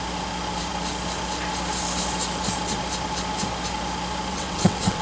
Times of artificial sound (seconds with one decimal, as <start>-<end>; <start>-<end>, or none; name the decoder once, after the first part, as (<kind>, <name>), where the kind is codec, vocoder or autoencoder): 4.3-5.0 (vocoder, WaveNeXt)